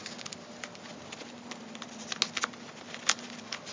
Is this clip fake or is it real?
real